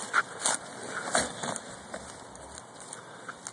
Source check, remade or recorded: recorded